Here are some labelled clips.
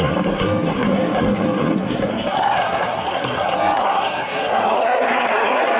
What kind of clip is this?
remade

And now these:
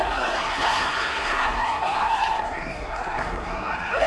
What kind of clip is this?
remade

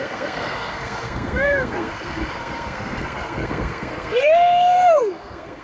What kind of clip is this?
remade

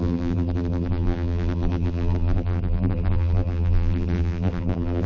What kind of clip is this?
remade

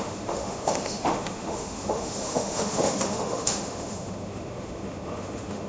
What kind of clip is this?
remade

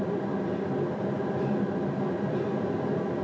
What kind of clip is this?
remade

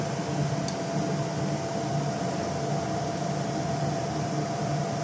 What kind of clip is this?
recorded